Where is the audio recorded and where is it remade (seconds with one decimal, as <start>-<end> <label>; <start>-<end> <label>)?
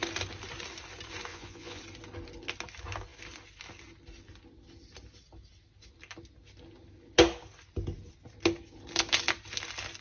0.0-1.3 recorded; 1.3-1.8 remade; 1.8-10.0 recorded